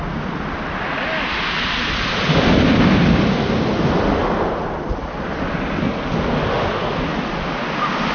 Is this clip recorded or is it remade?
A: recorded